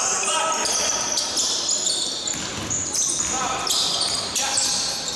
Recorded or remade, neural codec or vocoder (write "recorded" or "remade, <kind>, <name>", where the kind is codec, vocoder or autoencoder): recorded